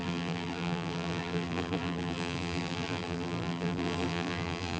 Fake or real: fake